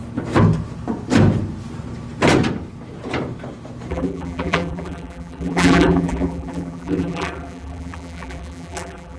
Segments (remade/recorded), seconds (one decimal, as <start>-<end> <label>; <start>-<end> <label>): 0.0-3.9 recorded; 3.9-9.2 remade